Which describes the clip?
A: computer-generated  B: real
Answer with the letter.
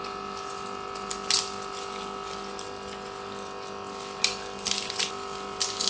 B